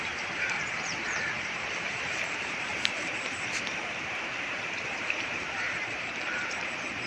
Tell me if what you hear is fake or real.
fake